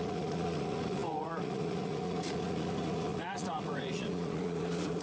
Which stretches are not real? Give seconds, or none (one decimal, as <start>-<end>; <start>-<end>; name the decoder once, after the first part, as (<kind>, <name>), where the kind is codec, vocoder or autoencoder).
0.0-5.0 (vocoder, Vocos)